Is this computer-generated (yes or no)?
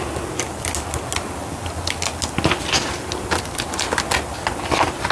no